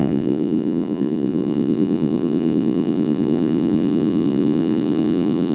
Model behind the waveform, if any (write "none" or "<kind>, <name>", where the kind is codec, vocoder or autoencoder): vocoder, Vocos